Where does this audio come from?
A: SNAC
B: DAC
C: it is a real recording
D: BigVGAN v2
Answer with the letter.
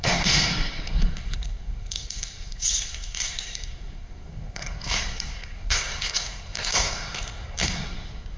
A